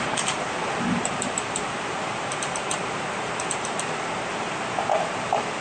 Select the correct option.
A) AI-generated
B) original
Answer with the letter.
A